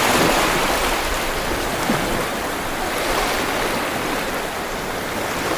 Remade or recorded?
recorded